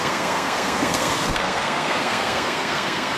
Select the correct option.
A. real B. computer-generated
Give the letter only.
B